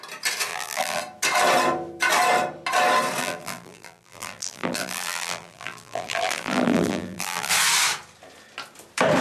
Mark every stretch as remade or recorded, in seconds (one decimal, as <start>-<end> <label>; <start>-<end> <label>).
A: 0.0-0.5 recorded; 0.5-1.0 remade; 1.0-3.2 recorded; 3.2-7.5 remade; 7.5-9.2 recorded